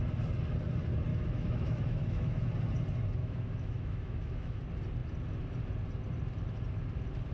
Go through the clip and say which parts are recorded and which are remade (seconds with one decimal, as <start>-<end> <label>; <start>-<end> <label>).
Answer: 0.0-1.1 recorded; 1.1-2.5 remade; 2.5-3.2 recorded; 3.2-4.6 remade; 4.6-7.3 recorded